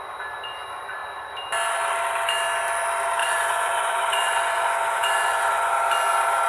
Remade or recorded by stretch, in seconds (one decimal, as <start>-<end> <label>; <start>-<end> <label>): 0.0-3.2 recorded; 3.2-5.7 remade; 5.7-6.5 recorded